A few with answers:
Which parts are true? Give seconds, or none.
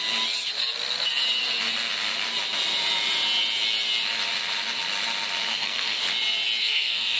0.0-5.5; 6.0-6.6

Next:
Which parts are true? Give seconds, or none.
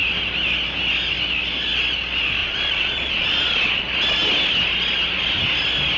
0.0-2.4; 3.8-6.0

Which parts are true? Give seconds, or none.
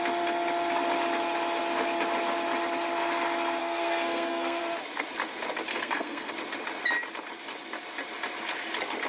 0.0-3.6; 4.6-5.7; 6.3-9.1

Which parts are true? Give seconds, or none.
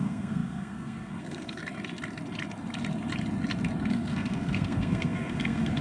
1.6-3.9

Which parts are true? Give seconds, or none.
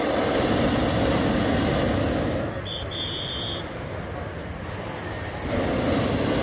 0.0-6.4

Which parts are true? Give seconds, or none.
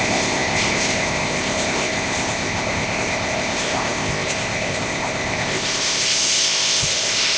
none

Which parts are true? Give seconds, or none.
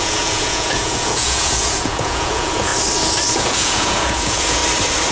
2.7-3.3; 4.6-5.1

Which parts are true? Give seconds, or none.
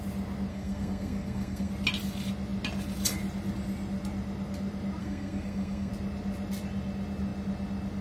0.0-0.5; 1.7-5.0; 5.9-8.0